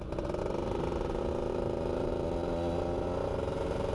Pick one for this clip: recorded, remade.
recorded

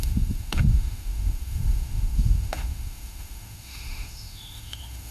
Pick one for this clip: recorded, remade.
remade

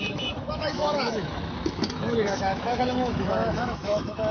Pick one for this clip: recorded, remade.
remade